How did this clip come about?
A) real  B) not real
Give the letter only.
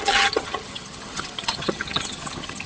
B